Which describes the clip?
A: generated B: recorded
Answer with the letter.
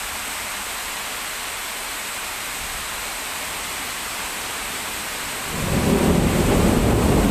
B